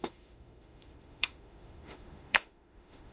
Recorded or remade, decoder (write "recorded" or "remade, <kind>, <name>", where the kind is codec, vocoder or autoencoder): remade, autoencoder, DAC-VAE